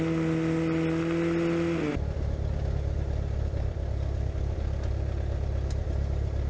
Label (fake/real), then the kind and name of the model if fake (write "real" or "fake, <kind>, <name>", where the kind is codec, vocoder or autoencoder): real